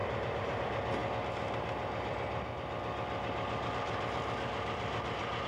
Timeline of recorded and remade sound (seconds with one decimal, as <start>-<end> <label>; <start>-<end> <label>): 0.0-1.0 remade; 1.0-3.7 recorded; 3.7-5.5 remade